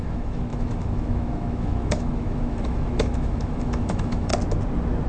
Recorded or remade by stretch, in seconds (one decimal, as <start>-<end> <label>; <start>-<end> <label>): 0.0-4.3 remade; 4.3-5.1 recorded